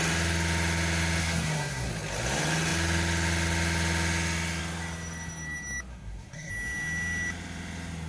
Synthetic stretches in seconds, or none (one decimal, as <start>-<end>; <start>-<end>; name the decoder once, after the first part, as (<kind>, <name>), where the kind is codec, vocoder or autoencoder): 1.2-1.9 (codec, SNAC); 5.9-6.5